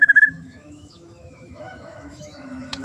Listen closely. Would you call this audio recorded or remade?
remade